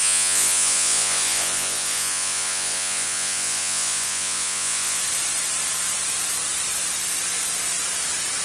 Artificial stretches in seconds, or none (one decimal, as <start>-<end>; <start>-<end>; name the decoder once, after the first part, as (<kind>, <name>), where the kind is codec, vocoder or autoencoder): 0.0-5.0 (vocoder, Vocos)